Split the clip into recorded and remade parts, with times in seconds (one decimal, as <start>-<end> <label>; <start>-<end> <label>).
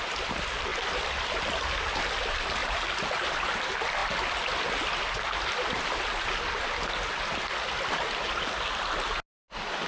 0.0-9.9 recorded